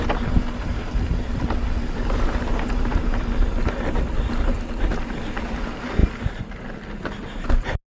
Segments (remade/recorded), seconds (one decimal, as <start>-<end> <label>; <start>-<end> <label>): 0.0-8.0 recorded